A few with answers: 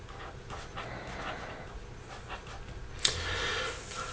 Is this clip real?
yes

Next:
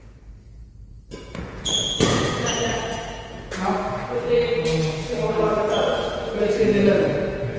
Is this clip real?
no